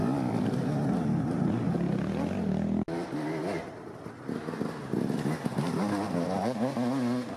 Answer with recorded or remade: recorded